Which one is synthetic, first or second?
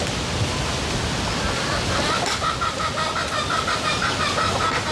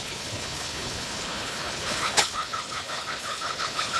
second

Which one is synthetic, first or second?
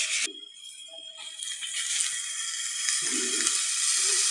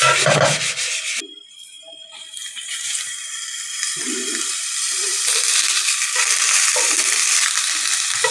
second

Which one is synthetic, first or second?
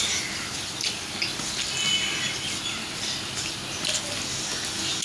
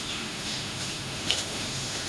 second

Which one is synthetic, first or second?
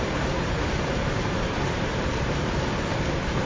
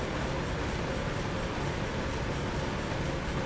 first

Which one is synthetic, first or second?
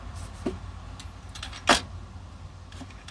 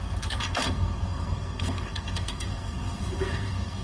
second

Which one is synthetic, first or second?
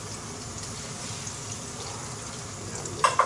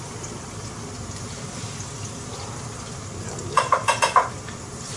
second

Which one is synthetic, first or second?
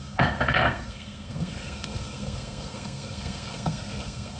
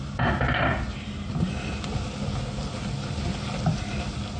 first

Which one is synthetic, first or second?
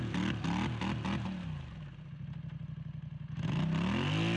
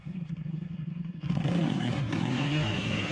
second